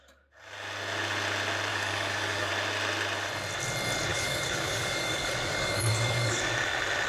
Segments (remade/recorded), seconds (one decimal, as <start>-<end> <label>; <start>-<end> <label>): 0.0-1.7 recorded; 1.7-2.5 remade; 2.5-4.1 recorded; 4.1-6.4 remade; 6.4-7.1 recorded